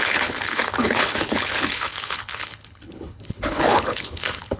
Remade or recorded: remade